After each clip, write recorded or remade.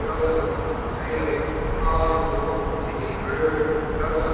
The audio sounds recorded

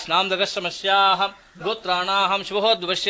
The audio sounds recorded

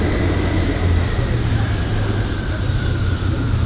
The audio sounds recorded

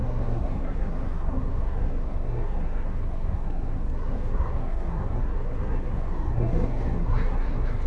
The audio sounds remade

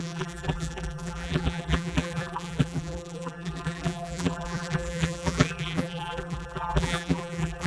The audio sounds remade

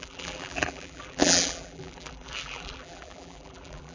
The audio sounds remade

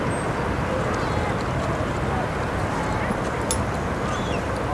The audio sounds recorded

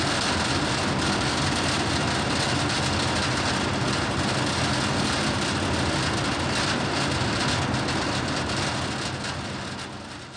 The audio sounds recorded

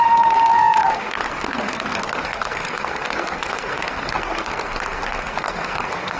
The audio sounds remade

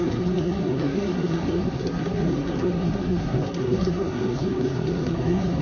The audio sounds remade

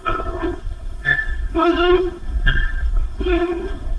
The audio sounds remade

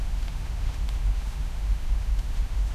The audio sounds remade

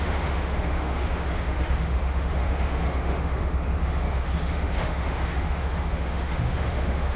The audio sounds remade